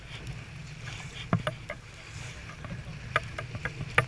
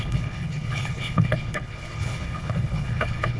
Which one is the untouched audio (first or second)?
first